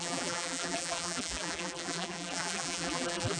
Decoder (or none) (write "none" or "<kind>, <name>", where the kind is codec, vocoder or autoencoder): vocoder, BigVGAN v2